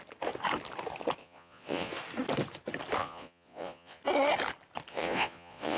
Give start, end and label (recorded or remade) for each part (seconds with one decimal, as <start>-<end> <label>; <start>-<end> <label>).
0.0-1.2 recorded; 1.2-1.9 remade; 1.9-3.0 recorded; 3.0-4.0 remade; 4.0-4.9 recorded; 4.9-5.8 remade